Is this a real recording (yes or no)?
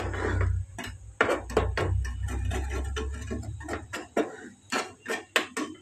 yes